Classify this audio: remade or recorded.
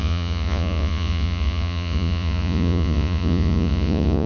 remade